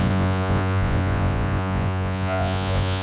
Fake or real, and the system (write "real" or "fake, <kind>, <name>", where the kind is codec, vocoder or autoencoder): fake, vocoder, Vocos